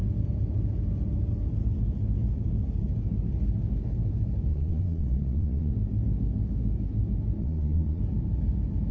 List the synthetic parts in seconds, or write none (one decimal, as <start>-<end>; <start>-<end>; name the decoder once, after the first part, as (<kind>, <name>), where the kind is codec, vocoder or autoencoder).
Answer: 4.5-5.7 (vocoder, Vocos); 7.4-8.0